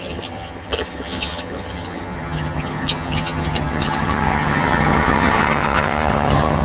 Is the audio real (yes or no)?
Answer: no